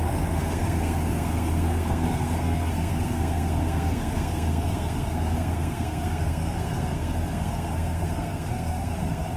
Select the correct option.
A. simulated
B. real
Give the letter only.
A